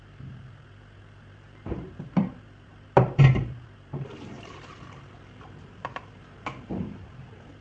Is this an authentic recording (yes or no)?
no